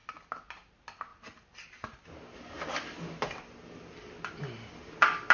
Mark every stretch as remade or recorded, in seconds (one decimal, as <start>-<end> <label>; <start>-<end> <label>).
0.0-5.3 recorded